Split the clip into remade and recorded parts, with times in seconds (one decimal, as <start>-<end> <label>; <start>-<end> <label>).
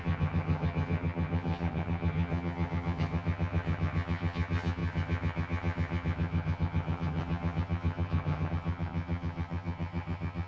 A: 0.0-10.5 remade